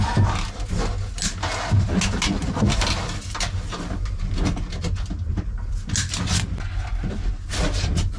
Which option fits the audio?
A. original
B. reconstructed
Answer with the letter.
A